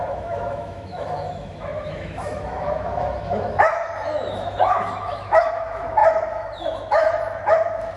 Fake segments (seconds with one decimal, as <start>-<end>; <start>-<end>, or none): 0.0-8.0